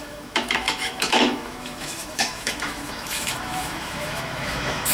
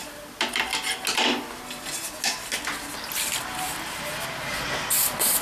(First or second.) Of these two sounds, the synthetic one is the first